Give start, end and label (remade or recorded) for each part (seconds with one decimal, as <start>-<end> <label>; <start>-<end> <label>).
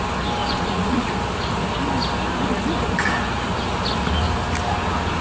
0.0-0.4 recorded; 0.4-1.1 remade; 1.1-5.2 recorded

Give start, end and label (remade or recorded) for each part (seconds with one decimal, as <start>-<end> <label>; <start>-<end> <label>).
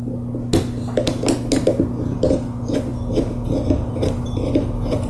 0.0-5.1 recorded